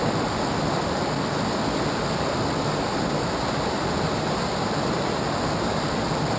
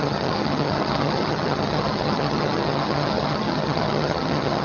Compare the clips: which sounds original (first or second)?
first